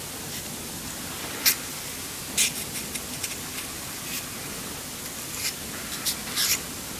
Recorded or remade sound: recorded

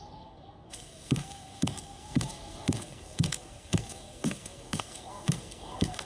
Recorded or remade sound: remade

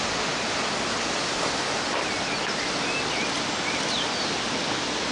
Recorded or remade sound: recorded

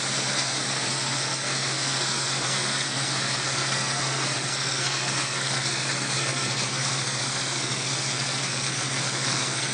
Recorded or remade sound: remade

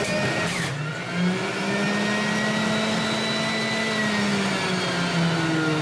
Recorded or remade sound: recorded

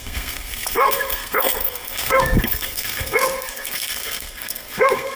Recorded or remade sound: remade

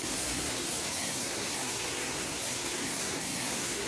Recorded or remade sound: remade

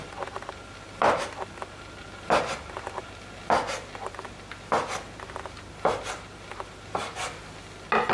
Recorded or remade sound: recorded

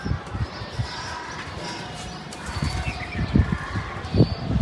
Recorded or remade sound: recorded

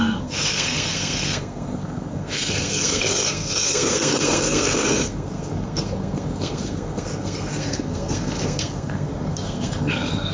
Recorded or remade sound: remade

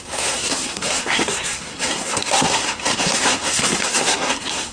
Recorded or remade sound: remade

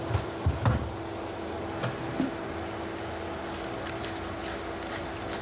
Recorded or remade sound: recorded